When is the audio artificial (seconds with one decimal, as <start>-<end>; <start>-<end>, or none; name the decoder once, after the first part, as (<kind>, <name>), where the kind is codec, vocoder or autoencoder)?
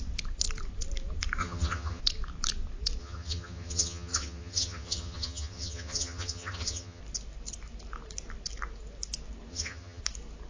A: 1.4-2.0 (vocoder, HiFi-GAN); 3.0-7.0; 9.5-10.0